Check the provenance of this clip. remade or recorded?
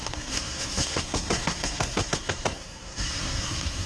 remade